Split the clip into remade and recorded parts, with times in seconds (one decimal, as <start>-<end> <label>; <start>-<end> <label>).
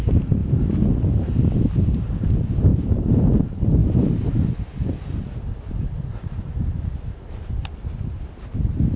0.0-9.0 recorded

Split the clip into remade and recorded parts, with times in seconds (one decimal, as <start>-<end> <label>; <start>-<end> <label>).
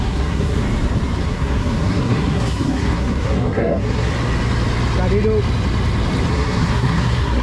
0.0-0.6 remade; 0.6-1.2 recorded; 1.2-4.1 remade; 4.1-6.3 recorded; 6.3-7.4 remade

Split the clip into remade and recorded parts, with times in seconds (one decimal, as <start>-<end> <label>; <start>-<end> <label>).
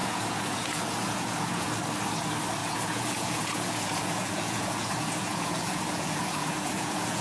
0.0-1.7 remade; 1.7-2.6 recorded; 2.6-7.2 remade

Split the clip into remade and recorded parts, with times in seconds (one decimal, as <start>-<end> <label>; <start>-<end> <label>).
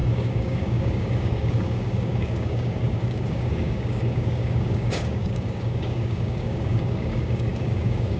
0.0-8.2 remade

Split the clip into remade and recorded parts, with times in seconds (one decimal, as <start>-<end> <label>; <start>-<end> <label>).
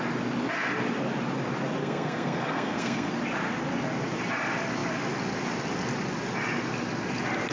0.0-1.8 recorded; 1.8-3.1 remade; 3.1-7.5 recorded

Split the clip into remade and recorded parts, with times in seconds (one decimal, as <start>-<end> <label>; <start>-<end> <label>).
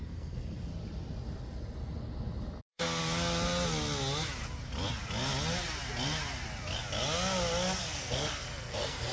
0.0-0.7 remade; 0.7-2.6 recorded; 2.6-3.0 remade; 3.0-7.8 recorded; 7.8-9.1 remade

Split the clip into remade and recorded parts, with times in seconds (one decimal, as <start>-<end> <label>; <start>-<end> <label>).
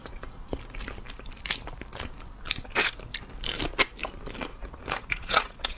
0.0-0.6 remade; 0.6-4.5 recorded; 4.5-5.8 remade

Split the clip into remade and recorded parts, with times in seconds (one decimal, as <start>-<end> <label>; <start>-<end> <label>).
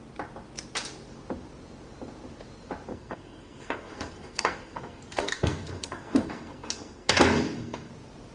0.0-2.9 recorded; 2.9-7.9 remade; 7.9-8.3 recorded